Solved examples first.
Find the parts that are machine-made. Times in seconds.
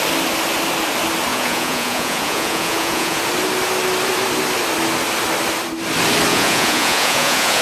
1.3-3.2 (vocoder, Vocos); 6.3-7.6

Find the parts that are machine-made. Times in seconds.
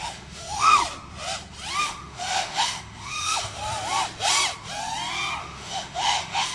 0.0-0.8 (autoencoder, DAC-VAE); 1.8-3.6; 5.4-6.5